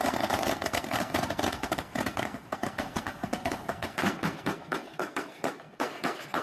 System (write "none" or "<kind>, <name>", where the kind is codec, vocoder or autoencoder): codec, SNAC